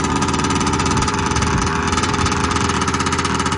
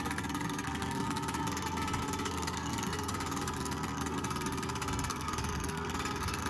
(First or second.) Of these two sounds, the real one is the first